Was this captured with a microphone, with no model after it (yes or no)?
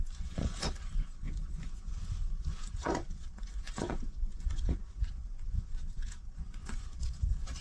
no